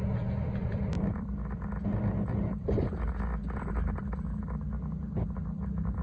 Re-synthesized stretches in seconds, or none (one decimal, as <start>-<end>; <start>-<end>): 0.6-1.3